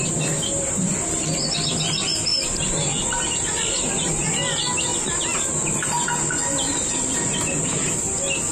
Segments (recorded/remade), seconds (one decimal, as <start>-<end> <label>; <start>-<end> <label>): 0.0-2.3 recorded; 2.3-3.0 remade; 3.0-6.7 recorded; 6.7-7.4 remade; 7.4-8.5 recorded